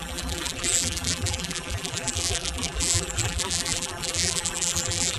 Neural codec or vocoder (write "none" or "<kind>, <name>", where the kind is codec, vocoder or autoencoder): vocoder, BigVGAN v2